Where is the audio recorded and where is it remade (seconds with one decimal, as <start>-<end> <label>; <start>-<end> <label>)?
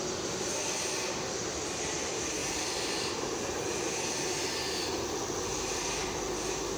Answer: 0.0-2.4 recorded; 2.4-3.1 remade; 3.1-6.8 recorded